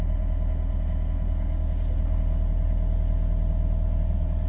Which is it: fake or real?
real